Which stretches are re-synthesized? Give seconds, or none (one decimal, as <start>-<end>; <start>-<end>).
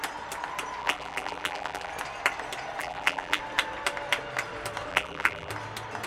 0.8-1.9; 2.8-3.4; 4.9-5.5